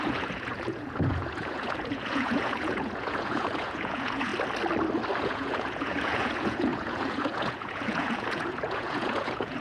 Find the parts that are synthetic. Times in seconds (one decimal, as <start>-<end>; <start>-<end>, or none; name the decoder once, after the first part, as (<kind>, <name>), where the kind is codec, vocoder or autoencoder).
0.0-4.3 (vocoder, Vocos); 5.2-9.6